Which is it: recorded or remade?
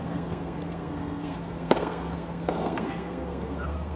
remade